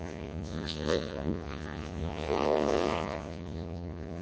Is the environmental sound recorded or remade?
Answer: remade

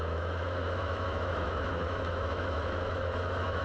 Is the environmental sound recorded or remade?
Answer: remade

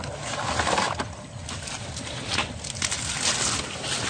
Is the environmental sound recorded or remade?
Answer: recorded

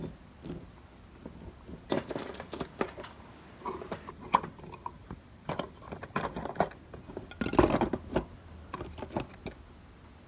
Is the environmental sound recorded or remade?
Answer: recorded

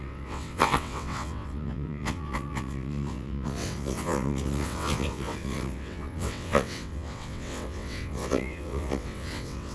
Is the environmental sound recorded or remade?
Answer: remade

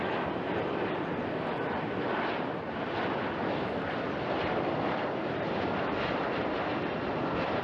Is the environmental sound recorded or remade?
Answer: remade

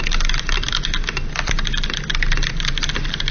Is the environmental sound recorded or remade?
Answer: recorded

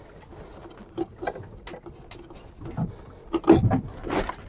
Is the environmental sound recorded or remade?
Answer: recorded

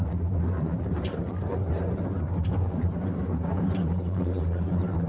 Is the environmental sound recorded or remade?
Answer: remade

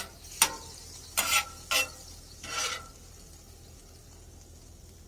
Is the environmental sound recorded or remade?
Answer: recorded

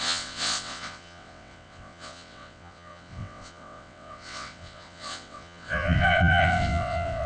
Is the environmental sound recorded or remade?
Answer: remade